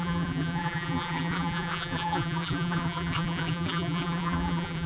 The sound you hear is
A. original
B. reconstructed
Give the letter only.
B